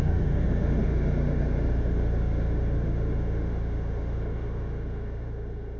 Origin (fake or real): fake